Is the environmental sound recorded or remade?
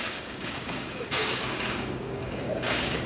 remade